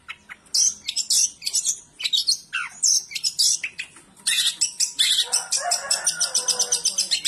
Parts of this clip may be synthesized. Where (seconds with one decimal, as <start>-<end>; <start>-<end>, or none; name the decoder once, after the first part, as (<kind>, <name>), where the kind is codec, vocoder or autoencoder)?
none